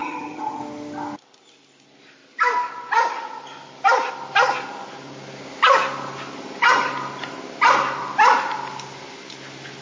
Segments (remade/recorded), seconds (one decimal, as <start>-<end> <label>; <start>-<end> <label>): 0.0-0.6 remade; 0.6-9.8 recorded